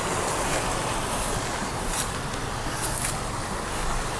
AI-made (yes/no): no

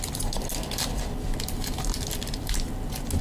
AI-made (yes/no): no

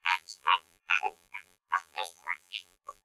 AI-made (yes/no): yes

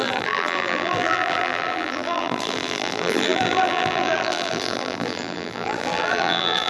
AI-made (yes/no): yes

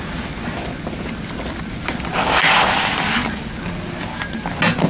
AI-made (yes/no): no